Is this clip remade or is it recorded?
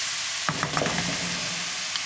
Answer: recorded